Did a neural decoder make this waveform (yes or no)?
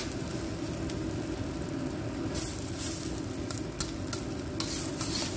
no